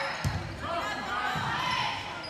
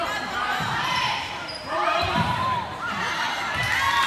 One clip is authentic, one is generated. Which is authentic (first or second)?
first